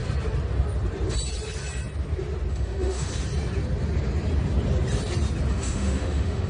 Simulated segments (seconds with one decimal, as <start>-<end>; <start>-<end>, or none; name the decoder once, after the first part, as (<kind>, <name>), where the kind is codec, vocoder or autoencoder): 2.5-3.1 (autoencoder, DAC-VAE); 5.5-6.5